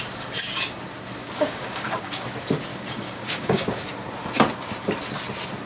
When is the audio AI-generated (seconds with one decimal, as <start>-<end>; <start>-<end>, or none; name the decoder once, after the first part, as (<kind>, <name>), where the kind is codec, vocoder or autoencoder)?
1.2-2.3 (codec, DAC); 2.7-3.8